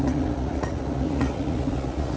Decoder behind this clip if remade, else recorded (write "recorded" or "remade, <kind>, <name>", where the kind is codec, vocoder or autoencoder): remade, vocoder, Vocos